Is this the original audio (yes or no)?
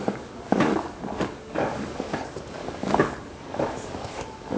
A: no